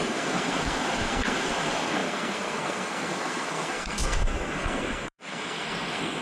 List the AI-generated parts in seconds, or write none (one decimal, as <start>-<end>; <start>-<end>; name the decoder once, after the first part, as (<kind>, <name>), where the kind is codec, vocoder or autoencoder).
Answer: 0.0-6.2 (codec, SNAC)